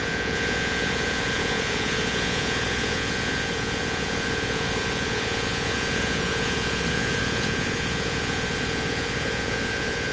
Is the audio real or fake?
fake